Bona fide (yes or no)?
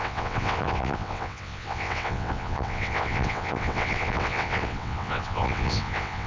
no